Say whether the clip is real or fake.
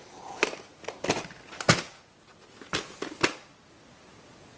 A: real